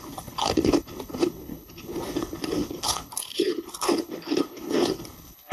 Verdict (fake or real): fake